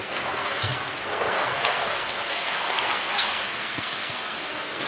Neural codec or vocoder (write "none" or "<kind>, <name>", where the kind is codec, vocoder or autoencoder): codec, SNAC